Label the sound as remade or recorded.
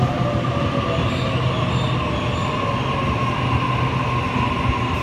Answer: recorded